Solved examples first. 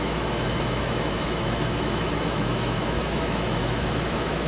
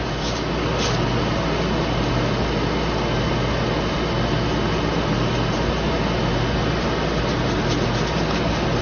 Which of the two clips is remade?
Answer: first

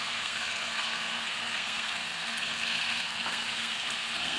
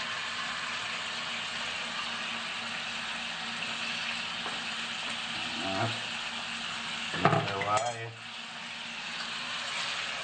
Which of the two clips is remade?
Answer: first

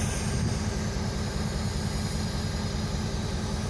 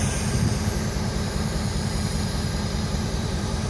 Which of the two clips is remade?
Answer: second